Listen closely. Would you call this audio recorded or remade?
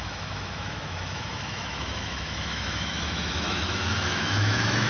remade